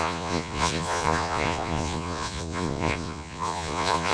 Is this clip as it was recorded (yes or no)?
no